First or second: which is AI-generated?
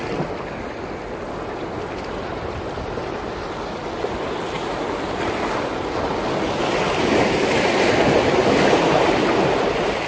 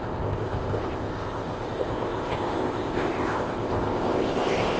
second